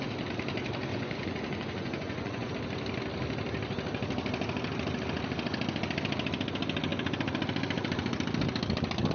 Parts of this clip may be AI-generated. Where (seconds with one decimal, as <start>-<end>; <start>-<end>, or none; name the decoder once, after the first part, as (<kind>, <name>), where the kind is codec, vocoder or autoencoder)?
0.9-2.5 (vocoder, Vocos)

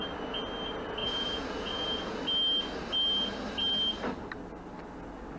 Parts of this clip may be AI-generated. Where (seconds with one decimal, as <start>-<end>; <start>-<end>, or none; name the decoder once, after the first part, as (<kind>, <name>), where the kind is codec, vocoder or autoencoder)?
1.0-2.2 (vocoder, Vocos)

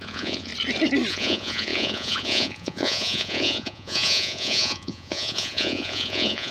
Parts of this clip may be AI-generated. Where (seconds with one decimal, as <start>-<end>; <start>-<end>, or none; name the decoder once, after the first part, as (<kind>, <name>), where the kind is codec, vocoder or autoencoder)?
0.0-0.5 (vocoder, Vocos); 1.1-6.5

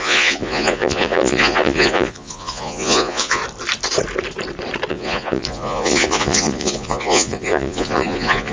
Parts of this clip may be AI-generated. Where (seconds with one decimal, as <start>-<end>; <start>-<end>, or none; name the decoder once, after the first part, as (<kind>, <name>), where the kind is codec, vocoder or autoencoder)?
0.0-3.4 (vocoder, Vocos); 4.9-8.5

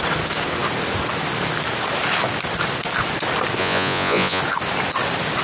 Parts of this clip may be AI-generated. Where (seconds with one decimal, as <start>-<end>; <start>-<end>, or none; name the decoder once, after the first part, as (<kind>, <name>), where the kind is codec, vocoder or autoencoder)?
3.6-4.4 (vocoder, Vocos)

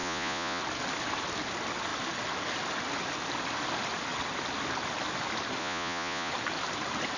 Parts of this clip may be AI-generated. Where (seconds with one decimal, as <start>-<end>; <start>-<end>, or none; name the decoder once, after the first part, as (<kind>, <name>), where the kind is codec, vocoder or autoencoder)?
0.0-0.6 (vocoder, Vocos); 5.6-6.3